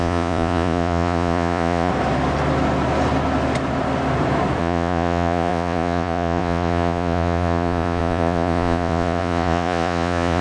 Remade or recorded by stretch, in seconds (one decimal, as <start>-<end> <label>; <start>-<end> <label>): 0.0-1.9 remade; 1.9-4.6 recorded; 4.6-10.4 remade